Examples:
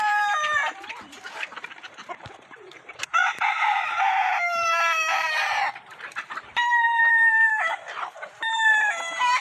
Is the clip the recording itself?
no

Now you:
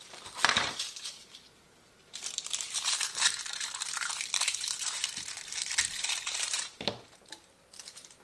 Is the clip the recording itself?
no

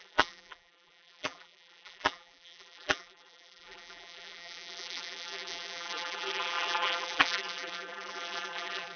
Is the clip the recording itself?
no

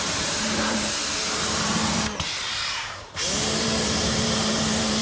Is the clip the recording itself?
no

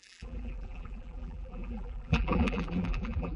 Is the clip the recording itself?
no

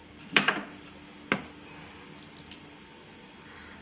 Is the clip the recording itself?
yes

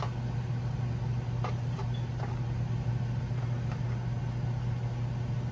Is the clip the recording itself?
yes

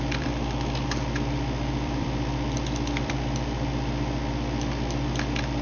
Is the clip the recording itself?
no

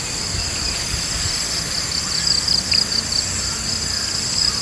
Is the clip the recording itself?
yes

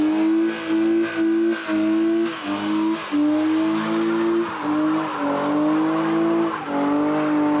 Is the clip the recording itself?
yes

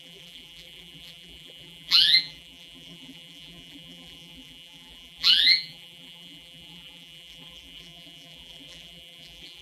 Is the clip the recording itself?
no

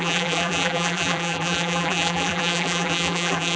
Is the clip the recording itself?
no